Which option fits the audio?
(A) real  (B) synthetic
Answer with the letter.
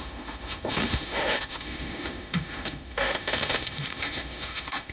B